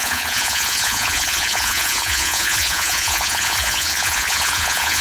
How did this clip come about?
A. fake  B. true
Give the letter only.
A